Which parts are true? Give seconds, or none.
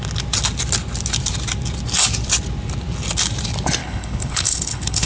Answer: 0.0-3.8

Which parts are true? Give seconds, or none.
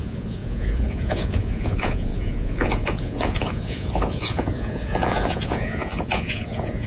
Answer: none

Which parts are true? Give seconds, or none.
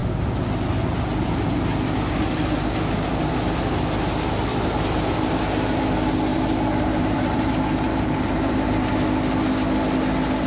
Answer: 0.0-4.5; 5.8-6.3; 8.9-10.5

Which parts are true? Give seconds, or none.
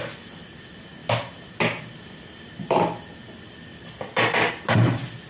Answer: 0.0-5.3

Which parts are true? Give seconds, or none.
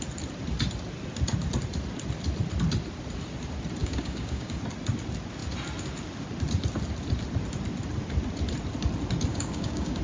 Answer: 0.0-3.8; 4.6-9.3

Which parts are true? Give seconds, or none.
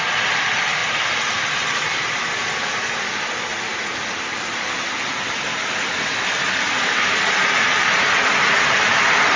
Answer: 0.0-9.4